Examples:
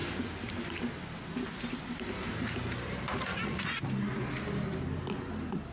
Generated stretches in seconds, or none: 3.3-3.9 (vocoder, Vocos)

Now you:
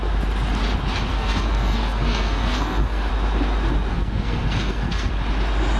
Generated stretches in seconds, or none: 1.1-3.1 (codec, SNAC); 3.9-5.1

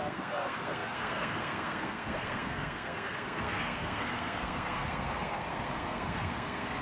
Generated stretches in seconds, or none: 0.0-6.8 (codec, SNAC)

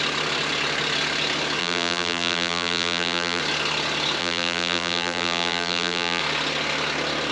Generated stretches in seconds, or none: 1.6-3.4 (vocoder, BigVGAN v2); 4.2-6.2

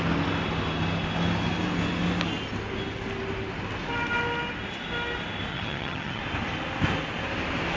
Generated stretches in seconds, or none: 5.5-6.2 (vocoder, HiFi-GAN)